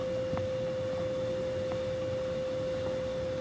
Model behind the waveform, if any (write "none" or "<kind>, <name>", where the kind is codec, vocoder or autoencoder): none